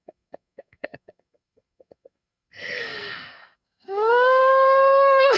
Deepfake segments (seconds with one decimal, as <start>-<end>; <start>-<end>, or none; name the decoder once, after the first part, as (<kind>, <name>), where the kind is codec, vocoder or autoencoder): 0.0-5.4 (codec, SNAC)